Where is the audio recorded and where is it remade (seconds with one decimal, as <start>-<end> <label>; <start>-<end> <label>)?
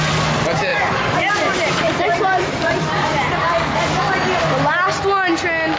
0.0-0.7 recorded; 0.7-3.8 remade; 3.8-5.8 recorded